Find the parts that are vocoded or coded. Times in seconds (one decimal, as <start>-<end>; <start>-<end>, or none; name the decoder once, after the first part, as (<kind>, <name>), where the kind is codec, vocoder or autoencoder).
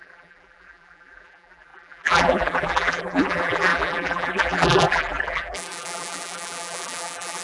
0.0-7.4 (vocoder, BigVGAN v2)